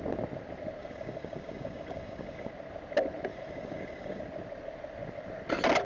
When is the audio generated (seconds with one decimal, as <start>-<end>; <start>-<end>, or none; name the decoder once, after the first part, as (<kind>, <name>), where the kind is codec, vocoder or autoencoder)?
0.8-2.5 (codec, DAC); 3.3-4.2